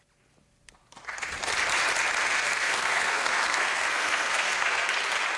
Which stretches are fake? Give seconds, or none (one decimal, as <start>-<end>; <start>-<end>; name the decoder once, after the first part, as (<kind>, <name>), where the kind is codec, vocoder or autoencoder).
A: 2.2-4.9 (codec, SNAC)